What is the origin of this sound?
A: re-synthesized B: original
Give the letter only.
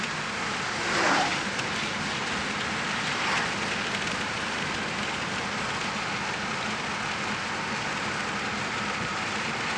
B